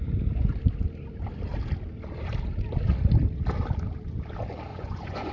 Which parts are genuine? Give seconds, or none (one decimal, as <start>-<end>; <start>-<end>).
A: 0.0-4.7